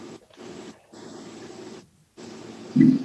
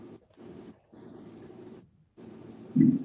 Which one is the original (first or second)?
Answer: first